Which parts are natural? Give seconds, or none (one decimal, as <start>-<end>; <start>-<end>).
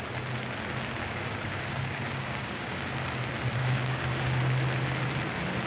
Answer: 0.0-1.0; 2.8-3.6; 4.4-5.7